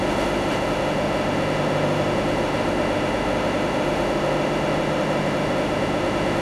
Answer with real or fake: fake